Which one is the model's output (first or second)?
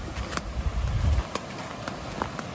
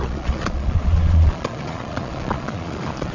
second